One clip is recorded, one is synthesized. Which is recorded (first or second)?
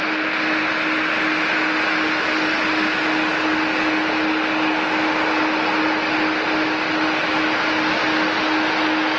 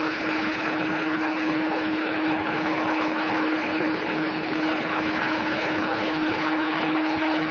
first